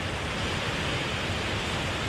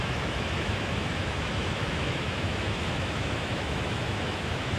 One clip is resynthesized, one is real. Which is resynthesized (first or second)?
second